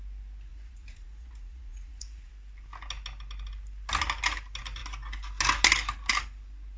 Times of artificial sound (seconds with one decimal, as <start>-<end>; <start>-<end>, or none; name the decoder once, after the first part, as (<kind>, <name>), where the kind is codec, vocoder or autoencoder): 0.5-2.3 (vocoder, Vocos)